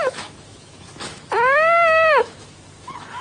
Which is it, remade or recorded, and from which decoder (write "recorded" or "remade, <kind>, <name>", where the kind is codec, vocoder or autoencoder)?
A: remade, autoencoder, DAC-VAE